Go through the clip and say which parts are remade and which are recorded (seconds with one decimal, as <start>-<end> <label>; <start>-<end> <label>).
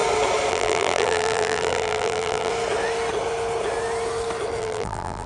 0.0-0.5 recorded; 0.5-2.5 remade; 2.5-4.6 recorded; 4.6-5.3 remade